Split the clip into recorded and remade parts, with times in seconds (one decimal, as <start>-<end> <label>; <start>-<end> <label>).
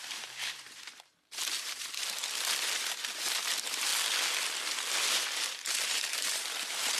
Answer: 0.0-2.2 remade; 2.2-3.0 recorded; 3.0-3.9 remade; 3.9-5.0 recorded; 5.0-7.0 remade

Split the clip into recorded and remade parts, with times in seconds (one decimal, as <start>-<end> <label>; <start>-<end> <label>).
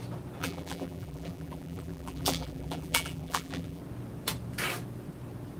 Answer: 0.0-0.4 recorded; 0.4-3.8 remade; 3.8-5.6 recorded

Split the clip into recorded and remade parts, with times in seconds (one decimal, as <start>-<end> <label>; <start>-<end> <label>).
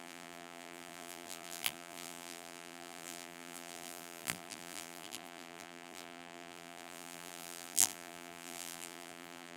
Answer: 0.0-9.6 remade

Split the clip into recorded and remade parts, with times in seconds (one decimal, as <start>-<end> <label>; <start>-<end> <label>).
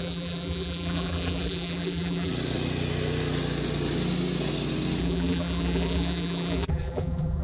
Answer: 0.0-2.3 remade; 2.3-5.0 recorded; 5.0-7.4 remade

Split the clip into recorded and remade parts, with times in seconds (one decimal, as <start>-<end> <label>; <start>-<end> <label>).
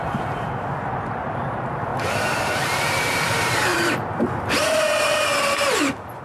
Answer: 0.0-1.9 remade; 1.9-2.5 recorded; 2.5-6.2 remade